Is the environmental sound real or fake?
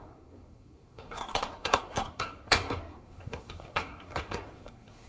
fake